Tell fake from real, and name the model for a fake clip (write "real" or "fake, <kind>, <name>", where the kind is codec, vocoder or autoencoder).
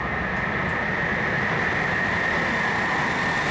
real